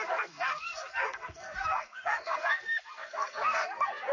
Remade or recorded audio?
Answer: remade